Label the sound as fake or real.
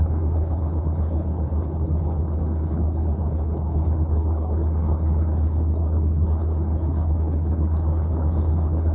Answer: fake